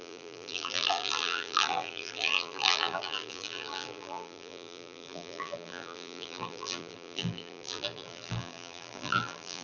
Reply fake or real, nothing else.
fake